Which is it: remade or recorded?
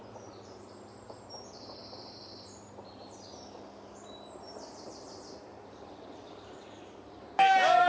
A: remade